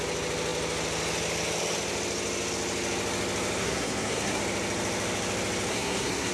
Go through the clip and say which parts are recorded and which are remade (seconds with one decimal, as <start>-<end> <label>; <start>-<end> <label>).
0.0-3.6 recorded; 3.6-4.4 remade; 4.4-5.7 recorded; 5.7-6.3 remade